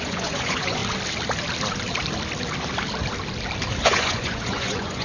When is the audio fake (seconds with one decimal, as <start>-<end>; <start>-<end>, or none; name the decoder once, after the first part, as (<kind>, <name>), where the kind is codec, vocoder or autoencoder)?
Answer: 0.0-0.8 (vocoder, Vocos); 3.8-5.0